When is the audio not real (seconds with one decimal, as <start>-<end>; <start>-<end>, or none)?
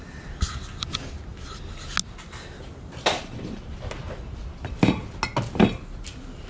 none